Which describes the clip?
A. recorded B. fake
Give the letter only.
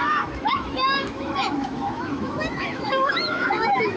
B